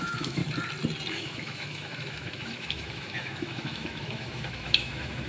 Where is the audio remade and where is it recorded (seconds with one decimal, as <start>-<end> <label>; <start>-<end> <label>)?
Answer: 0.0-0.4 remade; 0.4-1.1 recorded; 1.1-5.3 remade